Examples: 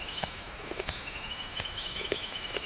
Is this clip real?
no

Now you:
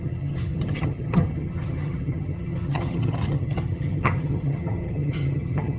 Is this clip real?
no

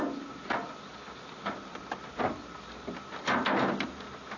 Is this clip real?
yes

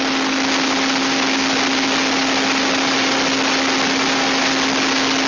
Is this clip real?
yes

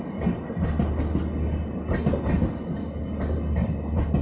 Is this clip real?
yes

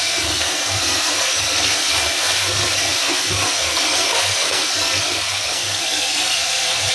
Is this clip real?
no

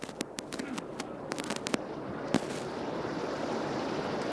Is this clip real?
yes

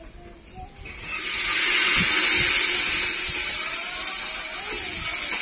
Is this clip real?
yes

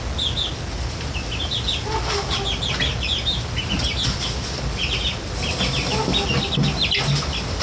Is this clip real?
yes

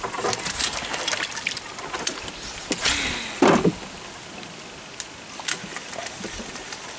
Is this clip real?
yes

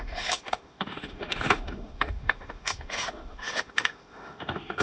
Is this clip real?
no